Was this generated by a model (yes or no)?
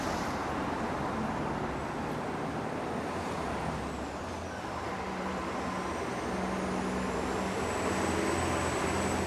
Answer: no